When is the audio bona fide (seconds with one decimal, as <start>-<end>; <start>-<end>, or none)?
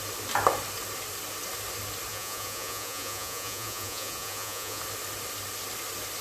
0.0-2.1; 4.8-6.2